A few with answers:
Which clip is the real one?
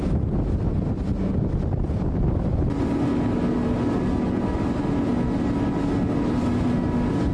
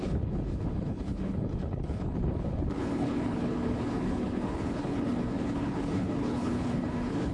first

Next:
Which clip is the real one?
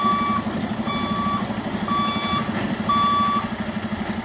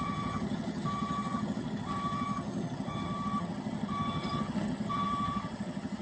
first